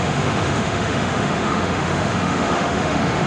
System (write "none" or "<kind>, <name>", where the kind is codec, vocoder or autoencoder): autoencoder, DAC-VAE